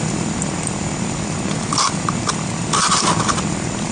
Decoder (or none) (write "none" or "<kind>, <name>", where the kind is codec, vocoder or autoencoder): vocoder, BigVGAN v2